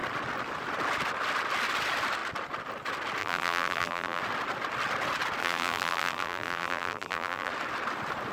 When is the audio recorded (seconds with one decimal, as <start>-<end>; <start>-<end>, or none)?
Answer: 0.0-3.2; 4.2-5.4; 7.5-8.3

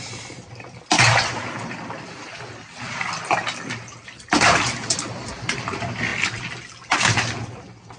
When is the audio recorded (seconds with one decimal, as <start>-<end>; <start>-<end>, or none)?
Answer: 0.0-8.0

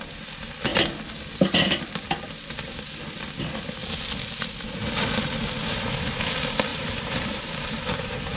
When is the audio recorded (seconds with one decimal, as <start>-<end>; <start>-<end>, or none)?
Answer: 0.0-6.7

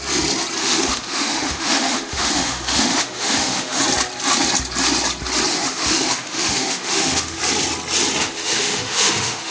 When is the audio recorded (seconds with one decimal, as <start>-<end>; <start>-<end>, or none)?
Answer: 0.0-0.6; 3.8-5.5; 7.4-8.2

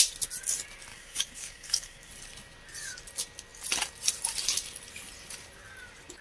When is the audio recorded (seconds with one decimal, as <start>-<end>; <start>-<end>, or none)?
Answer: 0.0-0.9; 2.1-6.2

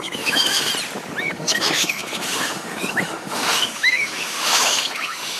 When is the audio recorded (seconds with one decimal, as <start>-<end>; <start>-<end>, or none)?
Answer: 0.7-1.2

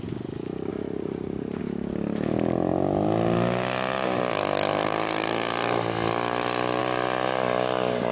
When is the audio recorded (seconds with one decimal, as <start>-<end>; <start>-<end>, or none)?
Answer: 0.0-0.7; 1.6-8.1